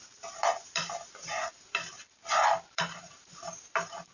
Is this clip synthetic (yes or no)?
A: yes